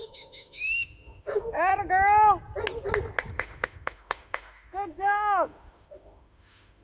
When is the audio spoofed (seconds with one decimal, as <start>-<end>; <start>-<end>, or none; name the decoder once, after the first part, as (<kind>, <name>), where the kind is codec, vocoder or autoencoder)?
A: 0.0-1.7 (autoencoder, DAC-VAE); 3.3-6.8